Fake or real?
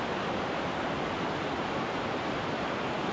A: real